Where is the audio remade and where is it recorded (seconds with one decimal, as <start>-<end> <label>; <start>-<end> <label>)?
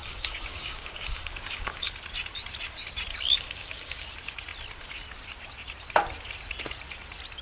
0.0-1.9 remade; 1.9-3.1 recorded; 3.1-4.1 remade; 4.1-7.4 recorded